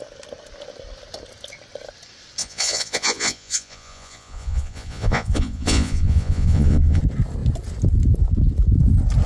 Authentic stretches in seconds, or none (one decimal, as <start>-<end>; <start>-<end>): 0.0-2.4; 7.0-9.3